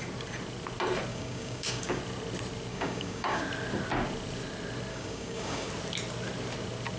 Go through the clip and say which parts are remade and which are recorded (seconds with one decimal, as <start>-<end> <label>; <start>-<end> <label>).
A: 0.0-1.1 recorded; 1.1-2.0 remade; 2.0-2.7 recorded; 2.7-3.4 remade; 3.4-4.9 recorded; 4.9-5.7 remade; 5.7-7.0 recorded